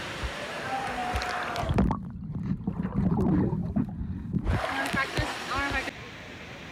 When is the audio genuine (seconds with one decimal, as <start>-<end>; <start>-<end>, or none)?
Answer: 1.0-2.4; 3.6-6.7